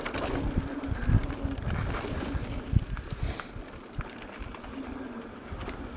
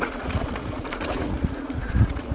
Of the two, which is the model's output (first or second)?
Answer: second